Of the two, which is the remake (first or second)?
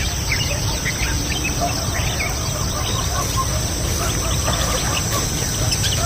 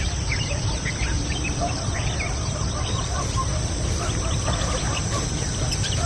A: second